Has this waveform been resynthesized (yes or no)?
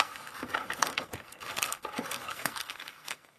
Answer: yes